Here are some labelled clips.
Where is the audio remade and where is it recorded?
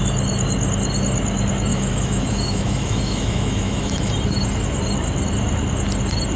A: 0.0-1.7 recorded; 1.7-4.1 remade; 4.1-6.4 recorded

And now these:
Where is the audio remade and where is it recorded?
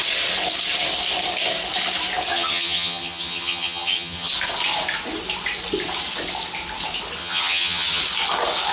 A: 0.0-2.3 recorded; 2.3-4.3 remade; 4.3-7.2 recorded; 7.2-8.0 remade; 8.0-8.7 recorded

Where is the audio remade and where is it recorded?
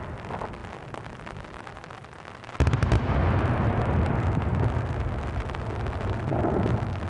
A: 0.0-7.1 recorded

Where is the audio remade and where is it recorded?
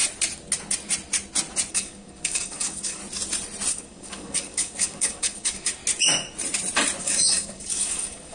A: 0.0-1.7 recorded; 1.7-3.0 remade; 3.0-3.7 recorded; 3.7-5.8 remade; 5.8-7.0 recorded; 7.0-8.3 remade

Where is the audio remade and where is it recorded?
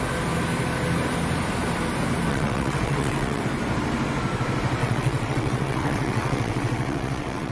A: 0.0-2.3 recorded; 2.3-3.4 remade; 3.4-4.8 recorded; 4.8-7.5 remade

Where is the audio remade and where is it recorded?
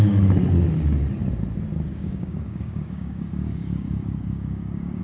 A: 0.0-1.9 recorded; 1.9-5.0 remade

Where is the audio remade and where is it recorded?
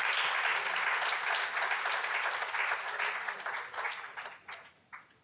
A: 0.0-0.5 recorded; 0.5-1.5 remade; 1.5-5.2 recorded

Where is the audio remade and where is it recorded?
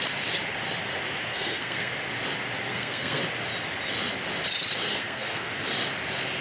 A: 0.0-1.3 recorded; 1.3-1.9 remade; 1.9-2.7 recorded; 2.7-3.2 remade; 3.2-4.9 recorded; 4.9-5.5 remade; 5.5-6.4 recorded